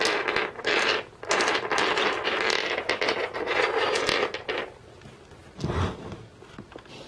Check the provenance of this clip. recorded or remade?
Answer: recorded